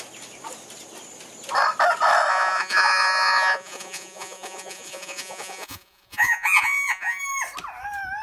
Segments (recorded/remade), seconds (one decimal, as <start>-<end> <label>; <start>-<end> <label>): 0.0-2.3 recorded; 2.3-7.2 remade; 7.2-8.2 recorded